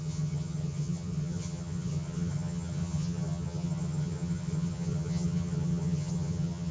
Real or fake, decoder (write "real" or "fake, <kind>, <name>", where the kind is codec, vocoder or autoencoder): fake, vocoder, HiFi-GAN